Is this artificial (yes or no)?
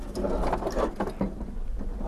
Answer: no